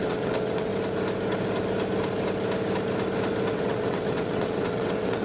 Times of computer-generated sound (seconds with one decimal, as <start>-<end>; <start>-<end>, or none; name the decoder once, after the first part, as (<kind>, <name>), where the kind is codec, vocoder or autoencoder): 0.0-0.7 (vocoder, WaveNeXt); 3.5-5.2